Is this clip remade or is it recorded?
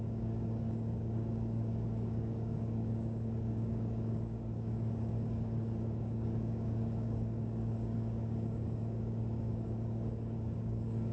remade